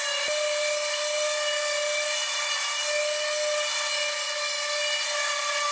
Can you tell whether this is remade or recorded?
recorded